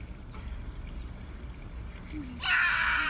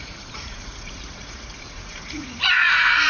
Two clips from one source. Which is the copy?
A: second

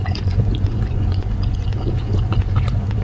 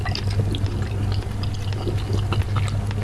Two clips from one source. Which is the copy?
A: first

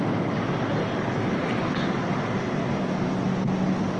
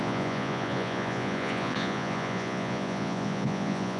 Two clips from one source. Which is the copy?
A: second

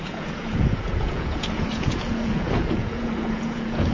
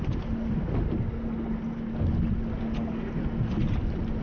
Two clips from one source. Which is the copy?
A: first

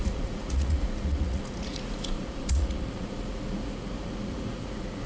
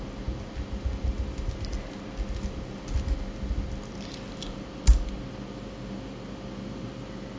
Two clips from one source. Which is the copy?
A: first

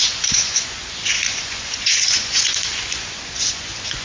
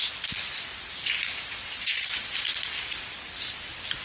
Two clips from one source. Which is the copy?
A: first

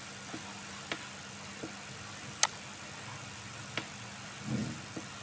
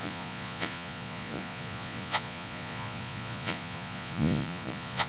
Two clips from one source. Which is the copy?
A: second